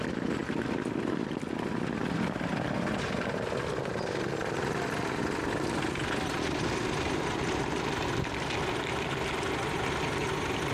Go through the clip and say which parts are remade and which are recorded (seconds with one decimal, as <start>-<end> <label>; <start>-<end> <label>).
0.0-10.7 recorded